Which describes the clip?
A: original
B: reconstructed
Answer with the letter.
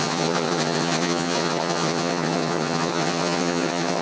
B